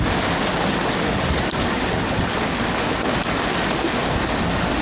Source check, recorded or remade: recorded